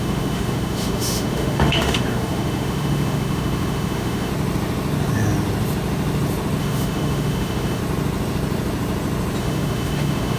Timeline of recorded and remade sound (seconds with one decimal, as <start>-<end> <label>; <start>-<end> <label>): 0.0-4.3 remade; 4.3-6.6 recorded; 6.6-7.8 remade; 7.8-9.4 recorded; 9.4-10.4 remade

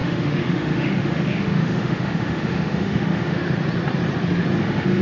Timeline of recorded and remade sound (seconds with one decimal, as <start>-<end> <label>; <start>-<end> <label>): 0.0-3.4 remade; 3.4-4.6 recorded; 4.6-5.0 remade

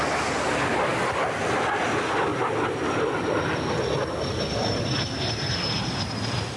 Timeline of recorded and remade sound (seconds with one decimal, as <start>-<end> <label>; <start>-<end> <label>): 0.0-6.6 recorded

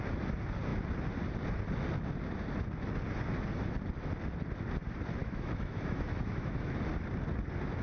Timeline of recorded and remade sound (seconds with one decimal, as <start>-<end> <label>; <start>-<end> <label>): 0.0-5.2 recorded; 5.2-6.8 remade; 6.8-7.8 recorded

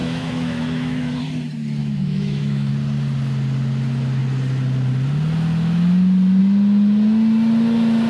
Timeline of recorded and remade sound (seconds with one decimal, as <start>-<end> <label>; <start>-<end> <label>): 0.0-1.2 remade; 1.2-1.8 recorded; 1.8-2.7 remade; 2.7-8.1 recorded

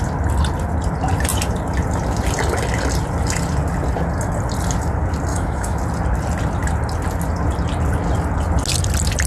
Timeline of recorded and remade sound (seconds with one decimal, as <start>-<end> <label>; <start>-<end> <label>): 0.0-5.3 recorded; 5.3-5.8 remade; 5.8-9.3 recorded

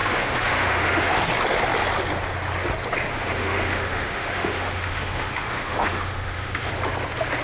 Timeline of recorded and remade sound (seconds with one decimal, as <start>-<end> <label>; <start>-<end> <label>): 0.0-1.2 remade; 1.2-3.1 recorded; 3.1-6.7 remade; 6.7-7.4 recorded